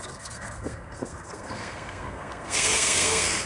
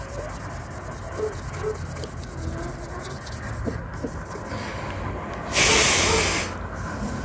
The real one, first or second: second